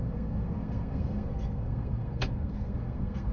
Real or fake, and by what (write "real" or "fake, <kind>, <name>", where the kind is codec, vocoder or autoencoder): fake, codec, SNAC